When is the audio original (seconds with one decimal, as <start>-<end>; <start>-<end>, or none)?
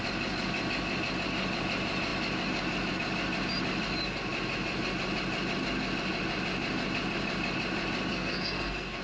0.0-8.1